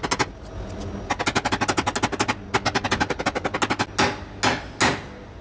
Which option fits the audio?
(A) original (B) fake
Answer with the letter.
A